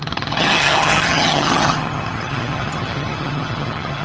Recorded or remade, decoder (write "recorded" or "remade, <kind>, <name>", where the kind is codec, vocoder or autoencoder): remade, vocoder, HiFi-GAN